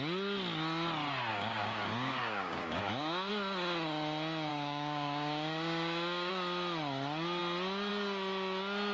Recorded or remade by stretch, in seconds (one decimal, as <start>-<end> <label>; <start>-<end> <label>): 0.0-1.3 recorded; 1.3-3.3 remade; 3.3-4.5 recorded; 4.5-6.3 remade; 6.3-8.9 recorded